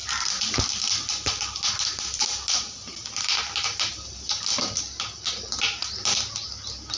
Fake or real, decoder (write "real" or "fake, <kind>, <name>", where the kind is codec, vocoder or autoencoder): real